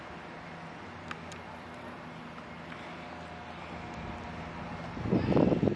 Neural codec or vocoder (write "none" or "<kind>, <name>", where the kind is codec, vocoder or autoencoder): none